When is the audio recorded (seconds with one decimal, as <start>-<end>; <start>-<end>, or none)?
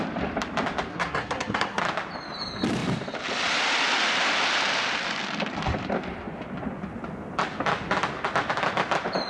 0.0-0.9; 1.8-9.3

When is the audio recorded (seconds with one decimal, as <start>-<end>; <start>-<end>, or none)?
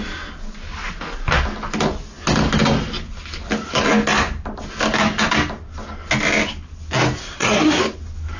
0.0-7.2; 7.8-8.4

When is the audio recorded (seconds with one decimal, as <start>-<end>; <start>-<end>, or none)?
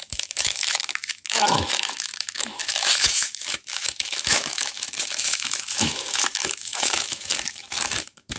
none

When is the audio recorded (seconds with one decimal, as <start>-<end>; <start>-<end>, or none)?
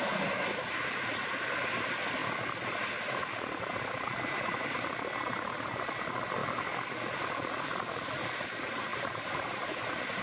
0.0-10.2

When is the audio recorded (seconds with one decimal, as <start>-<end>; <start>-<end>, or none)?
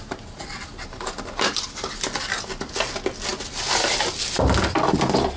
0.0-5.4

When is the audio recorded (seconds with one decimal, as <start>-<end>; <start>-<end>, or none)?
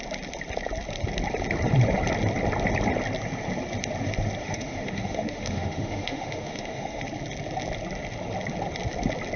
0.0-4.4; 7.0-9.4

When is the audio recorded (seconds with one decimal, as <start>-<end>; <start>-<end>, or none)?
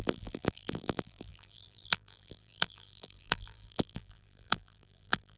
none